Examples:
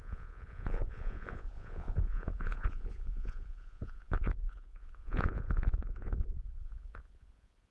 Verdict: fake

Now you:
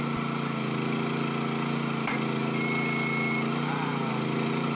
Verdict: real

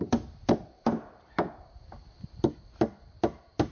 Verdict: real